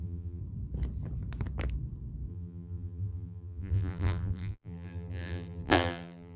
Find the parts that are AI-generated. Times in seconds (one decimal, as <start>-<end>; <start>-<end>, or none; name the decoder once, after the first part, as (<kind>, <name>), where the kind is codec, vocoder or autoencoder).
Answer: 0.0-0.4 (vocoder, BigVGAN v2); 2.3-6.4